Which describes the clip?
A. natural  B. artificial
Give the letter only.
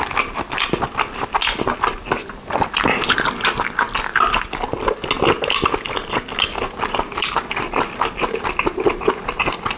A